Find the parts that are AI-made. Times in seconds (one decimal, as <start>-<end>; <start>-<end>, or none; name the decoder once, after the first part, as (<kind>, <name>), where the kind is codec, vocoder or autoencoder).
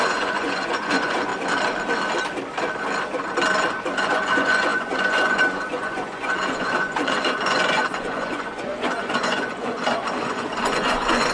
0.0-1.3 (vocoder, Vocos); 3.8-11.3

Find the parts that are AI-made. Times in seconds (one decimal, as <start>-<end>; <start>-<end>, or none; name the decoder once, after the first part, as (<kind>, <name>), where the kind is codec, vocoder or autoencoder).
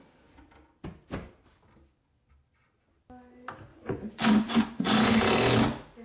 3.7-5.1 (vocoder, Vocos)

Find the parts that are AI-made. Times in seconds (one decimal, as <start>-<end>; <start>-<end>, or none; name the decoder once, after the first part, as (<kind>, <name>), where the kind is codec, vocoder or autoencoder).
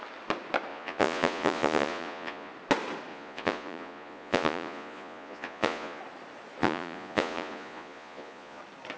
0.7-2.5 (vocoder, Vocos); 3.1-6.0; 6.6-8.6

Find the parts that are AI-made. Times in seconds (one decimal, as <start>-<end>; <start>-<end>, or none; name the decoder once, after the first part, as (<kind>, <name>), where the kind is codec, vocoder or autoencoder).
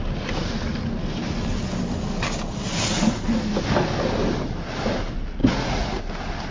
5.4-6.0 (vocoder, Vocos)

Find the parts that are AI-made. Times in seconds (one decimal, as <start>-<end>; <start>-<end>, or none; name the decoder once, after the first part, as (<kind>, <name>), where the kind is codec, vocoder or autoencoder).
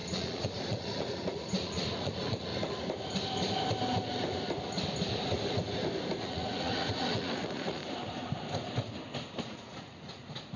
0.0-2.5 (vocoder, Vocos); 6.2-7.8; 9.4-10.6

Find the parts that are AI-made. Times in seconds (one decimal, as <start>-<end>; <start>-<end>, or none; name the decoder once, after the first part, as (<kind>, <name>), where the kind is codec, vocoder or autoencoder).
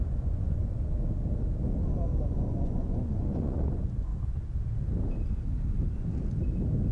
0.0-0.6 (vocoder, Vocos); 2.3-4.1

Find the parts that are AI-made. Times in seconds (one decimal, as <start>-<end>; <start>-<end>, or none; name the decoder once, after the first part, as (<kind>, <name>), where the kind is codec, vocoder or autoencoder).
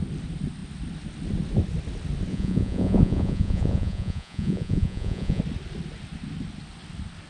2.3-5.4 (vocoder, Vocos)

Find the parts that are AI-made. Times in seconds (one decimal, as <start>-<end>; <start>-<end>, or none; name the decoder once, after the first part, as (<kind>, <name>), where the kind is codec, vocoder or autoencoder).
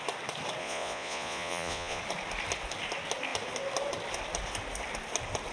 0.6-2.0 (vocoder, Vocos)